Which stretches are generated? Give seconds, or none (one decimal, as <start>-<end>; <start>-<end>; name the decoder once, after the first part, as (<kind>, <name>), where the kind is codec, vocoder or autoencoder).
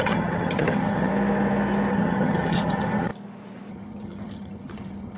0.0-1.1 (vocoder, HiFi-GAN); 1.9-3.1; 3.7-5.2